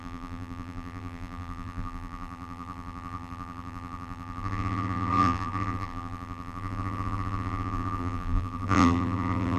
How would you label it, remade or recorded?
remade